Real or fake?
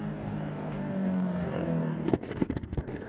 fake